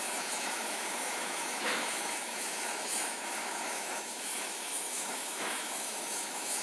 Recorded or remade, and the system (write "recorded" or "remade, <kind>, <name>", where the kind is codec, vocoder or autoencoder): remade, autoencoder, DAC-VAE